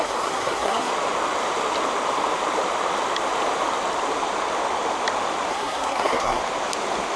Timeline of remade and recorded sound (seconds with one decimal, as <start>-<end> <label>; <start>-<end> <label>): 0.0-0.9 remade; 0.9-5.5 recorded; 5.5-6.4 remade; 6.4-7.2 recorded